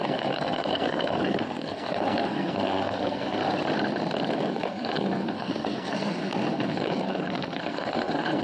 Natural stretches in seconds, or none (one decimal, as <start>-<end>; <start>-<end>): 3.4-4.3